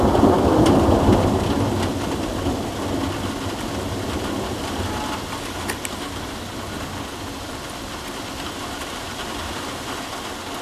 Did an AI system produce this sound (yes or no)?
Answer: no